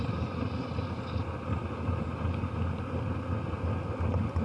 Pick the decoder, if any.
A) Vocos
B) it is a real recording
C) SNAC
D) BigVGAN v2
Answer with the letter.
B